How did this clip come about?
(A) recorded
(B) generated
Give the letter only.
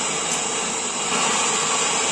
A